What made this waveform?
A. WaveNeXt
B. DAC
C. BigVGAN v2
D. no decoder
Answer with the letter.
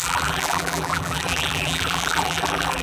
C